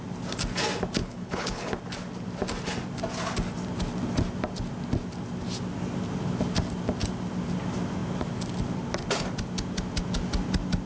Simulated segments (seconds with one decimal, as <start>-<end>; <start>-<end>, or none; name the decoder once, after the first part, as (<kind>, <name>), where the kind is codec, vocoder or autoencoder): 1.0-1.7 (codec, HILCodec)